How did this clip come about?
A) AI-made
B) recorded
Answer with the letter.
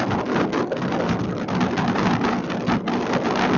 B